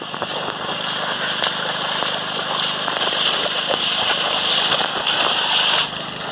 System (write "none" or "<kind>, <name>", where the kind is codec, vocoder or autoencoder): none